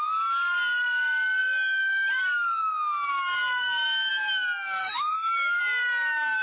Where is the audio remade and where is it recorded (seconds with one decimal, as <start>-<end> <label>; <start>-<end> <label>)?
0.0-4.8 recorded; 4.8-5.6 remade; 5.6-6.4 recorded